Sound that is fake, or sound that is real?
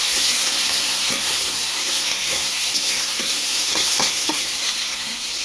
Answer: fake